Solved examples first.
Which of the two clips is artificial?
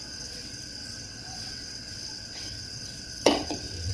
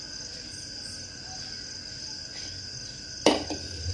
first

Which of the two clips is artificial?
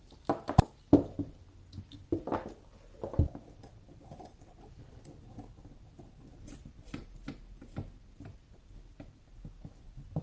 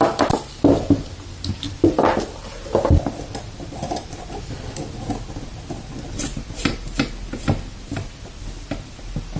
first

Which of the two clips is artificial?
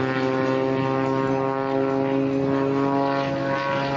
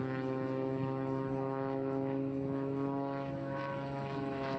second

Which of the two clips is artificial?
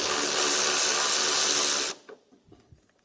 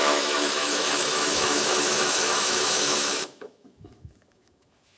second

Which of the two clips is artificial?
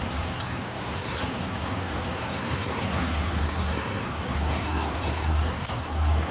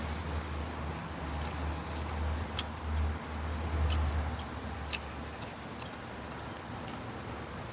first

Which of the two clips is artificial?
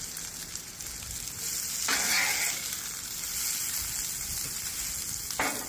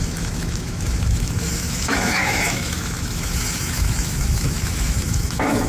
second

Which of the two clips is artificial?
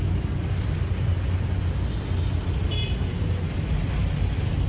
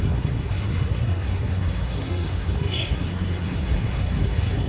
second